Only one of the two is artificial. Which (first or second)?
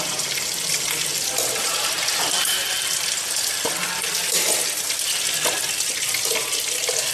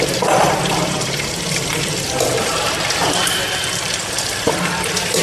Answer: second